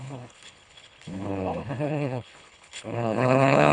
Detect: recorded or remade remade